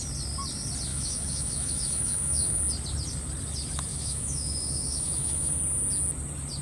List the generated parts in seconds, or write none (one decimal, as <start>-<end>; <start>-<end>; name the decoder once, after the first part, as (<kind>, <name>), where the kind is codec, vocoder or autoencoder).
0.9-2.6 (autoencoder, DAC-VAE); 3.9-5.6